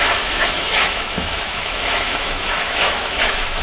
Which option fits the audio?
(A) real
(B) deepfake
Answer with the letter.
B